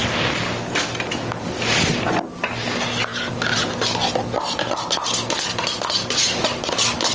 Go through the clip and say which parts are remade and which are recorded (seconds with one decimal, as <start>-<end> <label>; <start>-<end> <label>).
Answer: 0.0-7.1 recorded